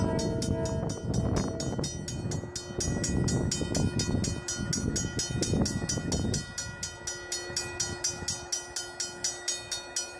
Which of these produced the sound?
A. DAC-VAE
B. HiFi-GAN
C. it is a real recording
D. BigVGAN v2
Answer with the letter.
C